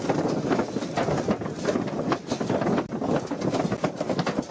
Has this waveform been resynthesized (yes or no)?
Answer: no